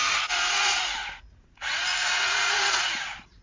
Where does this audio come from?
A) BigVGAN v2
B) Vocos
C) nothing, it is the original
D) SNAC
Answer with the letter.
B